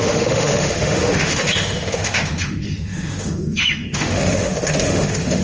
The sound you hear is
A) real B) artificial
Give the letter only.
B